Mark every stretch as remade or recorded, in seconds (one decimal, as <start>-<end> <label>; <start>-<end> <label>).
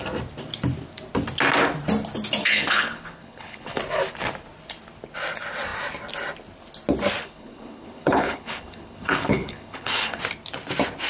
0.0-2.4 recorded; 2.4-3.8 remade; 3.8-7.2 recorded; 7.2-10.2 remade; 10.2-11.1 recorded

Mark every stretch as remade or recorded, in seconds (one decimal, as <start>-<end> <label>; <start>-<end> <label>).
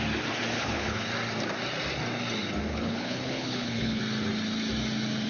0.0-0.5 recorded; 0.5-1.0 remade; 1.0-2.7 recorded; 2.7-4.0 remade; 4.0-5.3 recorded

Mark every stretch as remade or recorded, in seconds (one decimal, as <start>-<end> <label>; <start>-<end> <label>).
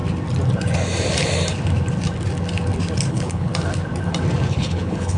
0.0-3.1 recorded; 3.1-3.5 remade; 3.5-4.5 recorded; 4.5-5.2 remade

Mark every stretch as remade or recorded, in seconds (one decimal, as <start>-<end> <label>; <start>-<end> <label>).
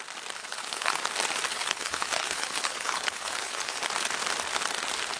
0.0-0.4 recorded; 0.4-1.0 remade; 1.0-1.5 recorded; 1.5-3.8 remade; 3.8-5.2 recorded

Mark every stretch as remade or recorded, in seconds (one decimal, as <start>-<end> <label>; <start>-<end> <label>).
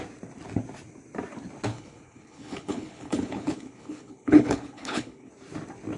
0.0-1.7 recorded; 1.7-5.3 remade; 5.3-6.0 recorded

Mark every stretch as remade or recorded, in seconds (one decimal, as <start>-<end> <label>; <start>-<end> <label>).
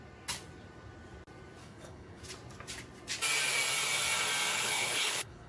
0.0-1.6 recorded; 1.6-2.2 remade; 2.2-4.5 recorded; 4.5-5.5 remade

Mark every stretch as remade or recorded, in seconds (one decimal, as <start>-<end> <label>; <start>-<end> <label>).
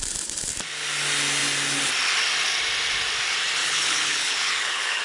0.0-3.6 recorded; 3.6-5.0 remade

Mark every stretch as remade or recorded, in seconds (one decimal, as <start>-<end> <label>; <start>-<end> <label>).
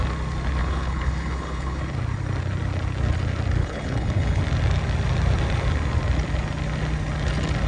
0.0-0.6 recorded; 0.6-1.8 remade; 1.8-3.6 recorded; 3.6-4.4 remade; 4.4-7.7 recorded